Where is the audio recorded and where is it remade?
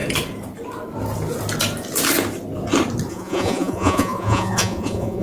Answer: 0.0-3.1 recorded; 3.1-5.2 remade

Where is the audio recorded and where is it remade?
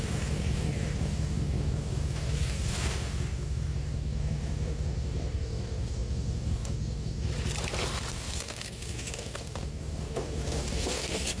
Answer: 0.0-7.3 remade; 7.3-8.1 recorded; 8.1-11.4 remade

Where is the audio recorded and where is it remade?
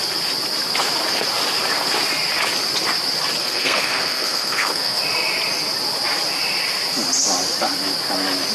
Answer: 0.0-3.4 recorded; 3.4-5.0 remade; 5.0-8.5 recorded